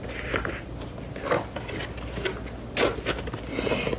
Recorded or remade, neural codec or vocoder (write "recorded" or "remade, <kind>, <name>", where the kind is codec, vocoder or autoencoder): recorded